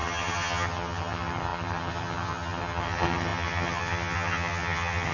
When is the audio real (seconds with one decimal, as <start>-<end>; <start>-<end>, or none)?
none